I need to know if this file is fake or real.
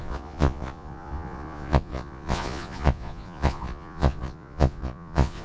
fake